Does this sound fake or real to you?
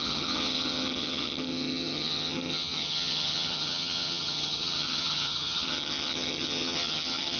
fake